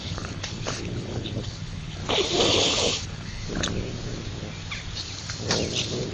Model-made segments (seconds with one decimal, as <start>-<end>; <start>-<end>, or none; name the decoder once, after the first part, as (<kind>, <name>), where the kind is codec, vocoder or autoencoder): 0.0-2.0 (codec, HILCodec); 2.5-3.4